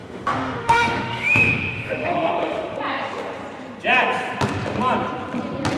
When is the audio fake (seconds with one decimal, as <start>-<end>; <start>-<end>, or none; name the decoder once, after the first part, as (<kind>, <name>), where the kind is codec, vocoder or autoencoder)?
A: 0.0-2.8 (autoencoder, DAC-VAE)